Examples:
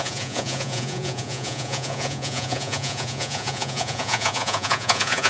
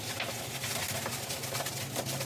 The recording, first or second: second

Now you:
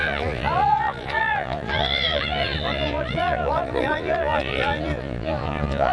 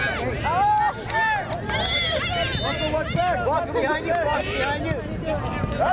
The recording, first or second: second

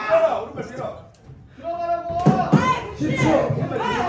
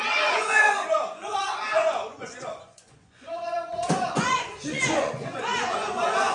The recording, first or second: first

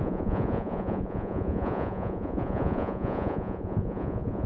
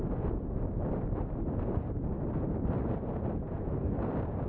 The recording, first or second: second